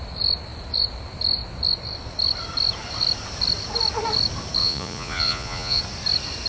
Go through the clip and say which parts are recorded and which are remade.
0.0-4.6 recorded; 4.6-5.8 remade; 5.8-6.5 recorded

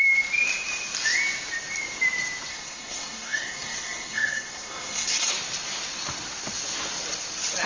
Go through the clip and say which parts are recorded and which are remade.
0.0-2.5 recorded; 2.5-5.3 remade; 5.3-7.7 recorded